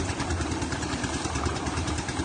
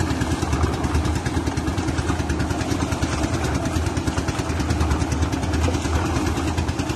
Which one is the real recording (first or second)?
second